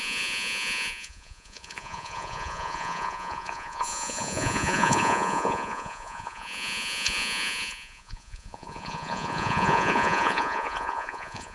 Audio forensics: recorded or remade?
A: remade